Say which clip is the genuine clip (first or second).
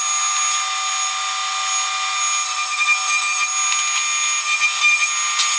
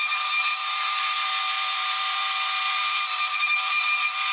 first